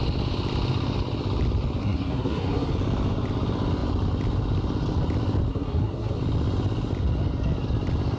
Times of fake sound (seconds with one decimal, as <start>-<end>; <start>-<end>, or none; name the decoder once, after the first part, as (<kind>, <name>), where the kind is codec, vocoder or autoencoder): 1.8-2.7 (codec, SNAC); 5.5-6.2